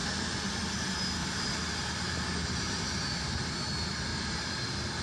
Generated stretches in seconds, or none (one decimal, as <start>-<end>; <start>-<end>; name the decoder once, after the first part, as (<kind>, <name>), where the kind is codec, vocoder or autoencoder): 0.0-0.5 (vocoder, BigVGAN v2); 1.2-2.3; 4.1-5.0